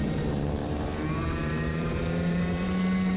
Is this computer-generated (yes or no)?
yes